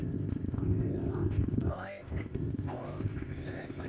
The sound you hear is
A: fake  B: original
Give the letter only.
A